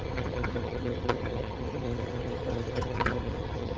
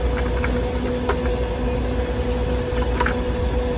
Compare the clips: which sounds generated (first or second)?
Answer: first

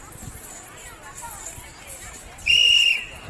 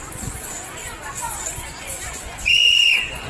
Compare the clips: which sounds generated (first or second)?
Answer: second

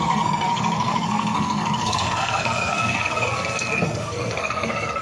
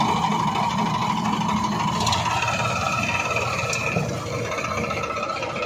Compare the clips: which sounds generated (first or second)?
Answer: first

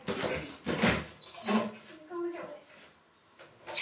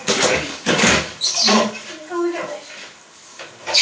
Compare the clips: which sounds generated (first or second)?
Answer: second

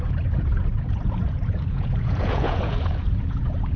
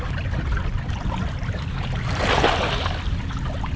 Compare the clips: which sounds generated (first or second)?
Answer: first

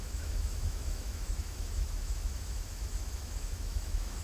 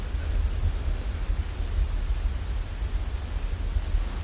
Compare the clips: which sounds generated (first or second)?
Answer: first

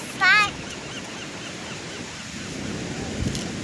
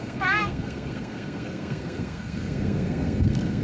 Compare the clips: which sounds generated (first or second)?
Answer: second